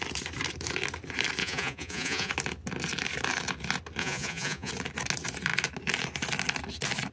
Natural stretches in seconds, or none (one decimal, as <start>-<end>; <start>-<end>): 0.0-1.4; 2.3-4.0; 4.7-7.1